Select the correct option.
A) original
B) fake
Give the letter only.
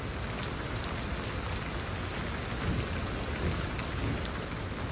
A